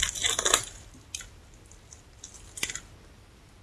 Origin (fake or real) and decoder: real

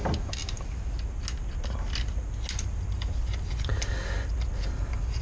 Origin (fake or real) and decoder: real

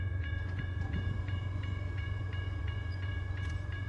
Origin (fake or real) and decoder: fake, vocoder, Vocos